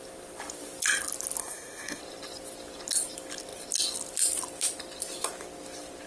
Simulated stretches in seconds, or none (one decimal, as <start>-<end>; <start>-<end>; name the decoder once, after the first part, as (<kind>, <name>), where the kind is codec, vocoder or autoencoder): 1.4-2.0 (codec, SNAC)